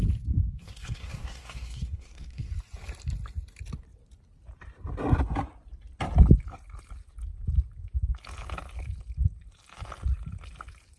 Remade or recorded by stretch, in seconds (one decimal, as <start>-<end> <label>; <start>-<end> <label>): 0.0-0.6 recorded; 0.6-2.5 remade; 2.5-11.0 recorded